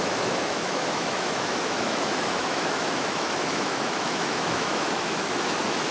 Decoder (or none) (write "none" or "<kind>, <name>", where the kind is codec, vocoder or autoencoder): autoencoder, DAC-VAE